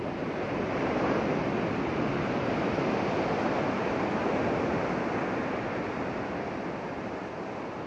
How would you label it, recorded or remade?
recorded